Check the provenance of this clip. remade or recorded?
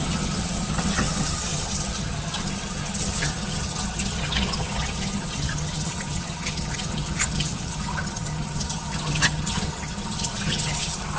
remade